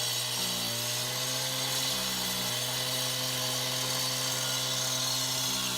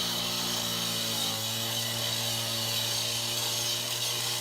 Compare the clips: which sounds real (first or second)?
first